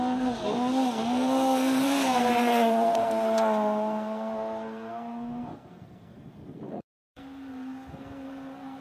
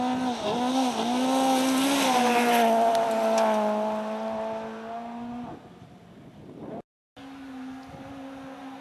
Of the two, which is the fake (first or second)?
first